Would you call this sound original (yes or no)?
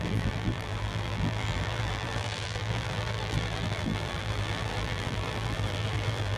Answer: no